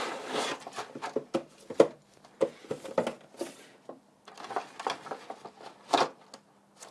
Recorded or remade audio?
recorded